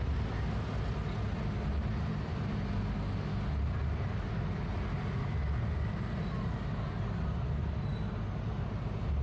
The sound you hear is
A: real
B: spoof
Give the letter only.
A